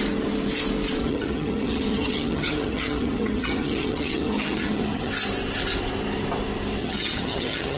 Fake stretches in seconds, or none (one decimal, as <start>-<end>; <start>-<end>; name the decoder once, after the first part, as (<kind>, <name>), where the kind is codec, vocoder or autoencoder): 1.0-5.1 (vocoder, HiFi-GAN); 6.8-7.8